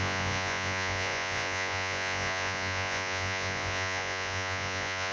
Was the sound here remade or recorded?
remade